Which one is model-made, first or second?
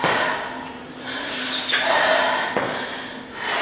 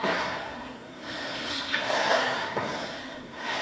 second